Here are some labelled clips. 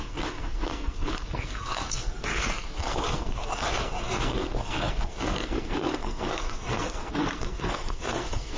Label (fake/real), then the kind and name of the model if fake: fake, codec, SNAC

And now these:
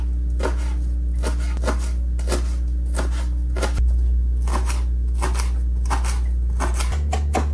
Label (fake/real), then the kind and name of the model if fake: real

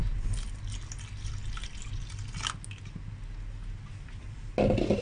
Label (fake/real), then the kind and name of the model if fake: real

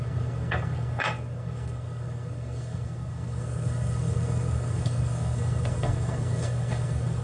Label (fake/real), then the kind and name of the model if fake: fake, codec, SNAC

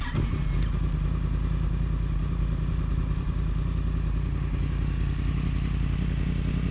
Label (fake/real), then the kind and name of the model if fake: real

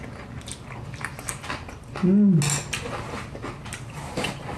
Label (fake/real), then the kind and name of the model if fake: real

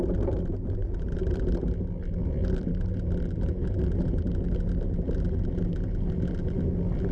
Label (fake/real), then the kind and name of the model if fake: real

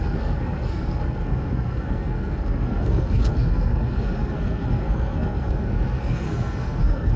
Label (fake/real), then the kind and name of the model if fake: fake, codec, SNAC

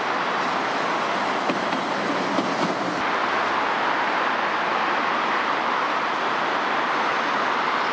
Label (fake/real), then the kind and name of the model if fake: real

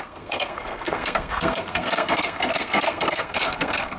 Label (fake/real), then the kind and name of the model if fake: fake, codec, SNAC